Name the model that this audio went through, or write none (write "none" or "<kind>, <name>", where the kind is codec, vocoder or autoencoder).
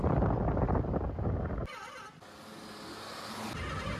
none